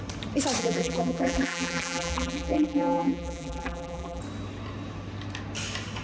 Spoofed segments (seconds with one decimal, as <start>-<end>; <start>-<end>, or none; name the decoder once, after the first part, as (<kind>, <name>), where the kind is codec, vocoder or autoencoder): 0.6-4.2 (vocoder, BigVGAN v2)